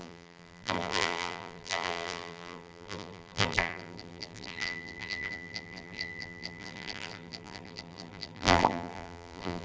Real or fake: fake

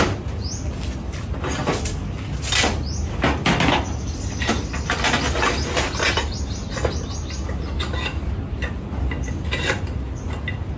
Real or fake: real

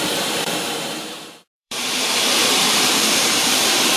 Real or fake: fake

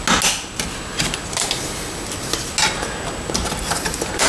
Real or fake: real